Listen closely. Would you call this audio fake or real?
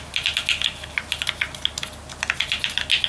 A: real